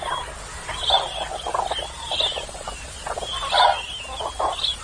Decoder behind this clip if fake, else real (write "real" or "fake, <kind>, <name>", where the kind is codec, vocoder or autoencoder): real